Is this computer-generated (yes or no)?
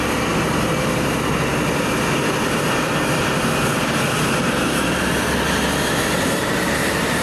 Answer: yes